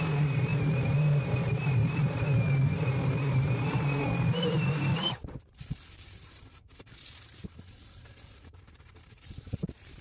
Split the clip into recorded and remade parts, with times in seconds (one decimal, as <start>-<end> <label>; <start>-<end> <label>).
0.0-10.0 remade